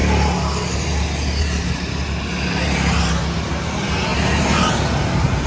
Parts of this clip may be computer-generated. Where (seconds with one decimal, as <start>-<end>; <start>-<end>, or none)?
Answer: none